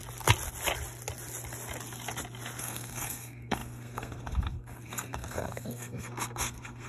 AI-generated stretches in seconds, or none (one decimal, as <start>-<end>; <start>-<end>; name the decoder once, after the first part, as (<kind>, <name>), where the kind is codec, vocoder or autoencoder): 2.6-6.9 (codec, SNAC)